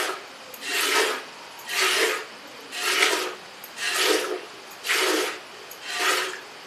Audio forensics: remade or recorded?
recorded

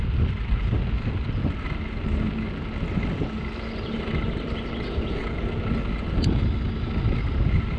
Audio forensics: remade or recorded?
recorded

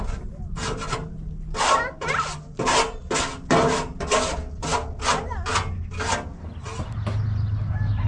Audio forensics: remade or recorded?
recorded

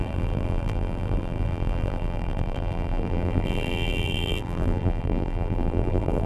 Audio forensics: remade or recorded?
remade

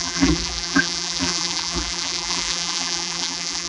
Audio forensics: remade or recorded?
remade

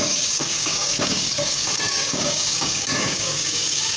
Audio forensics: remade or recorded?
remade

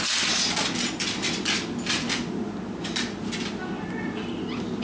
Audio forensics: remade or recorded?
recorded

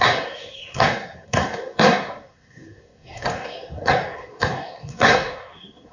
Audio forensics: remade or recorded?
remade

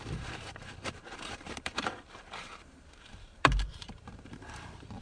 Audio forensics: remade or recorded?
remade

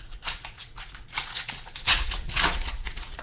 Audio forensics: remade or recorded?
remade